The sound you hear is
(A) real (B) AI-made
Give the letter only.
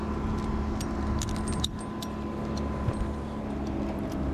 A